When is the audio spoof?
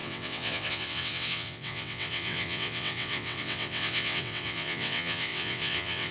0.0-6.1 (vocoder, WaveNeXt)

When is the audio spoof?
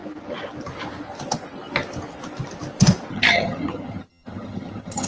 3.1-5.1 (vocoder, HiFi-GAN)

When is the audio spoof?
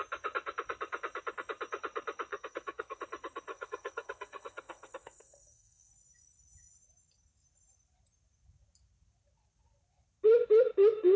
2.3-3.0 (codec, SNAC); 3.5-5.9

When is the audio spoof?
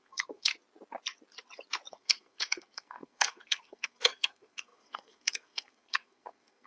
0.0-0.5 (codec, SNAC); 1.9-6.7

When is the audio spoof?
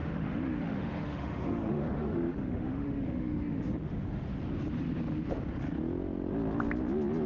0.0-4.4 (autoencoder, DAC-VAE)